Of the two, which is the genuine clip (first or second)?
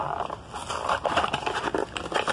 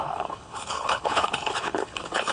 first